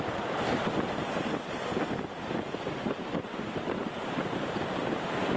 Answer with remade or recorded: remade